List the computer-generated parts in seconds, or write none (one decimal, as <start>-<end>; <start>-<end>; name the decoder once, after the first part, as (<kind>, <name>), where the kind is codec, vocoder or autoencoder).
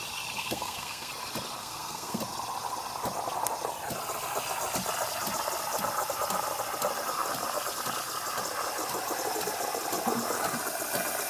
0.4-1.1 (codec, SNAC); 1.6-2.2